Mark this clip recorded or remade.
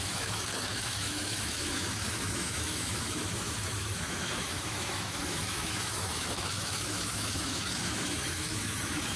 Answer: remade